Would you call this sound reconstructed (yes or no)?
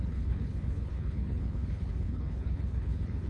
yes